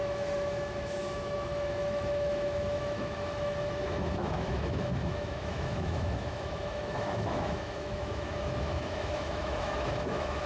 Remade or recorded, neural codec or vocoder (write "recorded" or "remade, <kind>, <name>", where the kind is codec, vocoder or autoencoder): remade, autoencoder, DAC-VAE